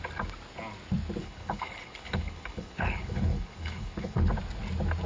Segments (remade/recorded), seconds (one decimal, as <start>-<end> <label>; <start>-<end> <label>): 0.0-1.2 recorded; 1.2-4.3 remade; 4.3-5.1 recorded